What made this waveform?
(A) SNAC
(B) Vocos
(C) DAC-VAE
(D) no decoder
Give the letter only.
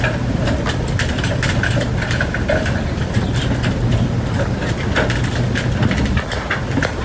D